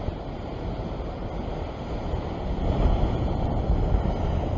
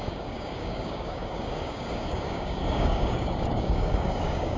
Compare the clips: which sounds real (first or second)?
first